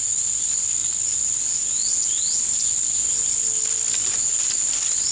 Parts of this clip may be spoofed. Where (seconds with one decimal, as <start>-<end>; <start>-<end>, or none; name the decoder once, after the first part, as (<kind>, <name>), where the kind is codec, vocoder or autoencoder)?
none